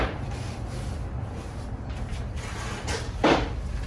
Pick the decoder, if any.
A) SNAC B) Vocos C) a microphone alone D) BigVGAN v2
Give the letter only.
D